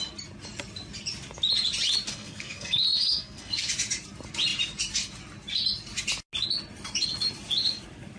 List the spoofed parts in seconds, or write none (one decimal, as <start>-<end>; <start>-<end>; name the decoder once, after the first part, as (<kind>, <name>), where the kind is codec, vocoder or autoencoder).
2.1-3.7 (codec, SNAC)